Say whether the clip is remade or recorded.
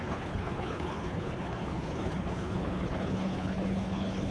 remade